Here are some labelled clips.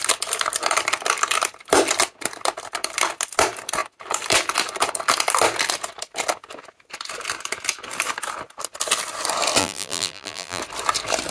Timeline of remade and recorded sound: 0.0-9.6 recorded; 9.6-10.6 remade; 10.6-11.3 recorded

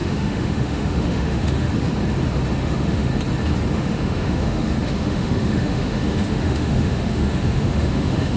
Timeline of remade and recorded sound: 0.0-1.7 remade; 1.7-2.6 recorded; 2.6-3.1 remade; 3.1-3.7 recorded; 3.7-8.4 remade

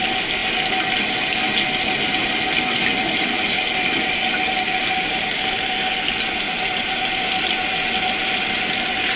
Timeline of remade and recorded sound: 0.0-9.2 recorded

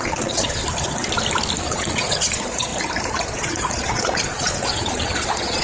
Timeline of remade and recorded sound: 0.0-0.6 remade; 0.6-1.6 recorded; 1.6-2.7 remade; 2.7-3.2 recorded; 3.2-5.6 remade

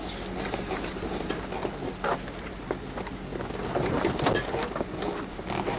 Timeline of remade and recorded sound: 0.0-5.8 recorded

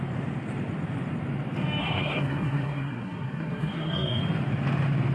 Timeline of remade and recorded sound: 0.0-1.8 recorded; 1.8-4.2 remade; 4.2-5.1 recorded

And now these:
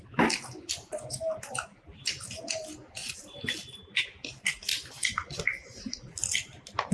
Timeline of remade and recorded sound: 0.0-0.8 recorded; 0.8-2.0 remade; 2.0-6.9 recorded

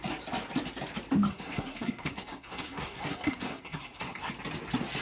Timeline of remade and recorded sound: 0.0-1.3 recorded; 1.3-4.3 remade; 4.3-5.0 recorded